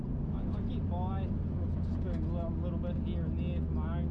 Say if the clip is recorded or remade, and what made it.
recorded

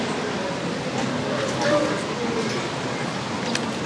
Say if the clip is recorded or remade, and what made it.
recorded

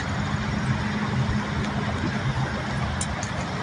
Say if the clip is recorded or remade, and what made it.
recorded